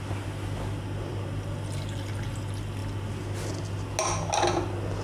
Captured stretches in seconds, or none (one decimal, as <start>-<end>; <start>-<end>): 0.0-5.0